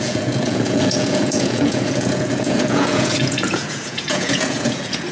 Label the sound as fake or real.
fake